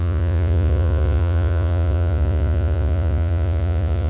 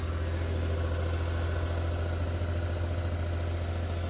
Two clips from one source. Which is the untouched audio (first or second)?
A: second